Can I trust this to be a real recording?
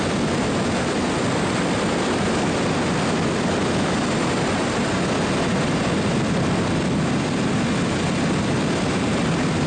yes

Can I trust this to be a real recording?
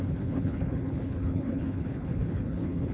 no